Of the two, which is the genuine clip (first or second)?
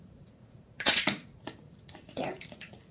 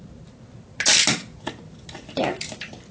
second